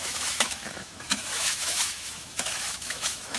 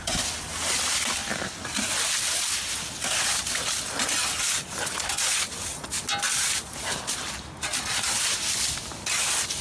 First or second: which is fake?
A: first